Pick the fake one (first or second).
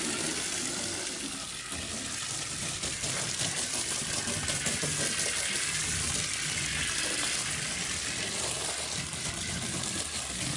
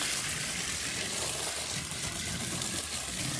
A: second